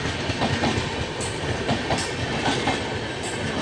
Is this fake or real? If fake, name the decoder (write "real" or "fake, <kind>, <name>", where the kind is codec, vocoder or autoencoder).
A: real